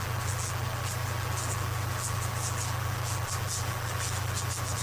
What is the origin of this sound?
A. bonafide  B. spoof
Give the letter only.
B